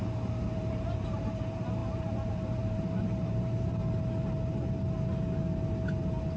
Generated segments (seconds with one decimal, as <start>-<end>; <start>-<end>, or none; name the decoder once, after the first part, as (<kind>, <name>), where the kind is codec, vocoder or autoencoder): 0.0-3.8 (vocoder, BigVGAN v2)